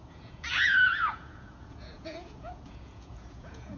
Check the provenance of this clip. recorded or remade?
remade